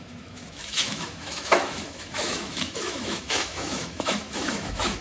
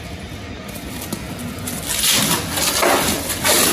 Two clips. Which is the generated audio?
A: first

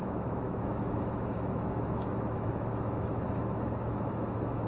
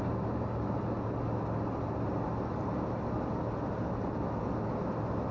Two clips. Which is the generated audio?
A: first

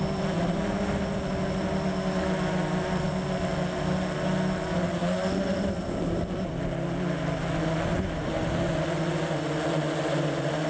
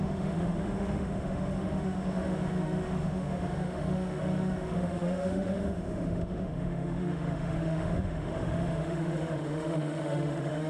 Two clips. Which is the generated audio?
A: second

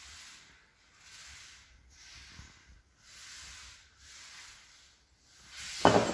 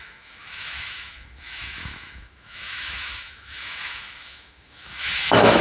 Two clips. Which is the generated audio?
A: second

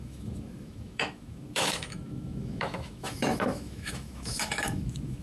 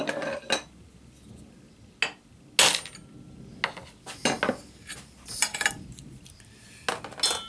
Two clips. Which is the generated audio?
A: first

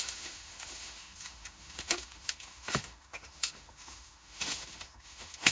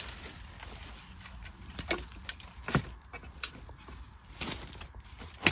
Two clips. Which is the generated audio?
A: first